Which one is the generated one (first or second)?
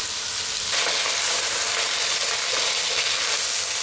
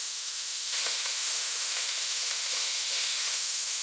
second